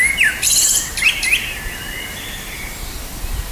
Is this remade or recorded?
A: recorded